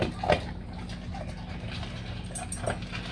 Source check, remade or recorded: recorded